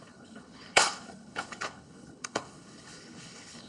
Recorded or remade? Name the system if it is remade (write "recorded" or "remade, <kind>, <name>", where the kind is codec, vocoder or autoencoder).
remade, codec, HILCodec